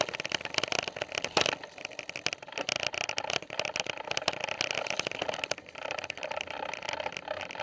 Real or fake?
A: real